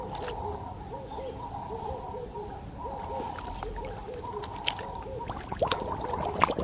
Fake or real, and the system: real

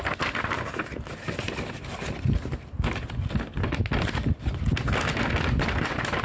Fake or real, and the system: real